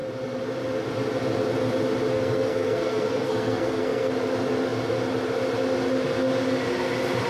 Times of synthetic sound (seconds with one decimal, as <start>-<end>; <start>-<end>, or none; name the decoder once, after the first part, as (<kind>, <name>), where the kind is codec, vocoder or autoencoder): 2.1-4.1 (codec, SNAC)